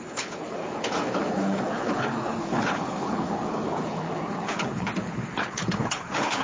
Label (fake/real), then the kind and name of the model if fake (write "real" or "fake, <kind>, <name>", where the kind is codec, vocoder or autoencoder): fake, codec, HILCodec